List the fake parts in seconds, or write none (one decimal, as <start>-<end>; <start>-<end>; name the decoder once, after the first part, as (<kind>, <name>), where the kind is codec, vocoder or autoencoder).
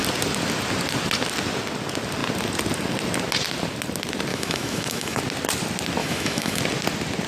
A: 4.3-5.2 (autoencoder, DAC-VAE); 6.0-6.6